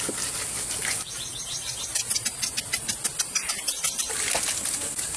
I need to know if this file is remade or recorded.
recorded